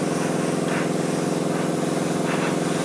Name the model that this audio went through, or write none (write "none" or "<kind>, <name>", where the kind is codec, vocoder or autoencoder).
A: none